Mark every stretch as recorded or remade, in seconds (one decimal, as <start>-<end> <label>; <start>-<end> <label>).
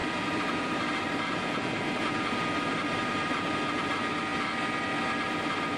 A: 0.0-3.5 remade; 3.5-5.8 recorded